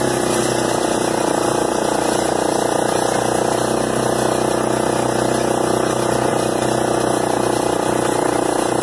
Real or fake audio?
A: real